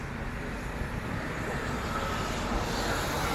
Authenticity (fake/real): real